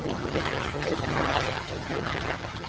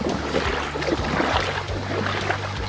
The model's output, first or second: first